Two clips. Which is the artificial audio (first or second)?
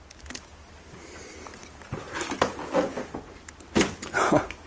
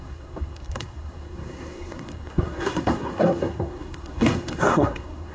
second